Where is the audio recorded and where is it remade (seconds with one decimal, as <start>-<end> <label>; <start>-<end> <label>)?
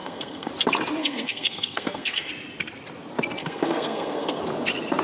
0.0-0.5 remade; 0.5-1.0 recorded; 1.0-2.3 remade; 2.3-3.4 recorded; 3.4-4.4 remade; 4.4-5.0 recorded